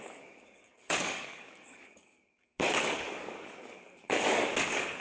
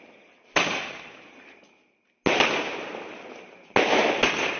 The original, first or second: second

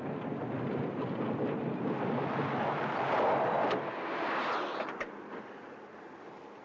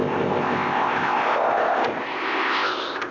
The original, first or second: first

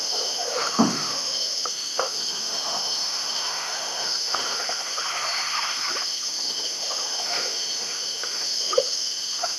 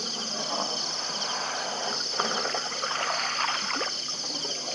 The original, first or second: second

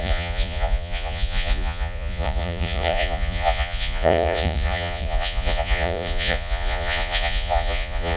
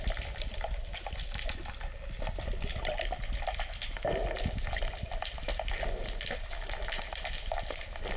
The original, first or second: second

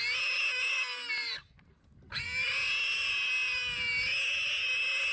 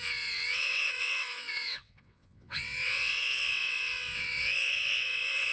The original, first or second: first